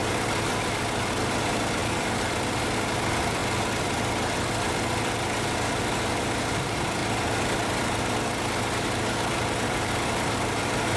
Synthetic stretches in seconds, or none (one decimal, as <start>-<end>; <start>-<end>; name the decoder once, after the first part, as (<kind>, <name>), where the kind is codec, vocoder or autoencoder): 0.8-3.4 (vocoder, BigVGAN v2); 5.8-7.0; 9.4-11.0